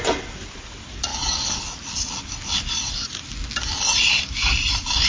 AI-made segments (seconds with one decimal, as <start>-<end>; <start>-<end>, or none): none